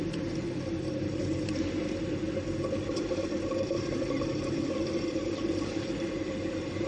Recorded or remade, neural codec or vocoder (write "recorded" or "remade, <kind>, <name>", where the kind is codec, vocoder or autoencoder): remade, vocoder, BigVGAN v2